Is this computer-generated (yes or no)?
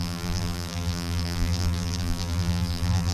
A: yes